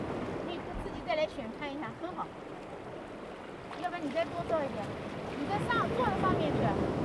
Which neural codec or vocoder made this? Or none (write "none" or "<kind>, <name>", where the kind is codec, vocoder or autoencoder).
none